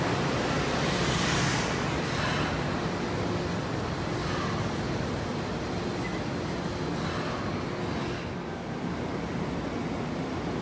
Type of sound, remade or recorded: recorded